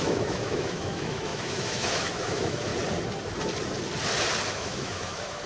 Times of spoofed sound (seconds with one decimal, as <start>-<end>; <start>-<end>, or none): 0.0-2.7; 4.5-5.5